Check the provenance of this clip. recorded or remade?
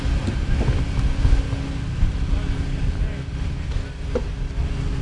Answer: recorded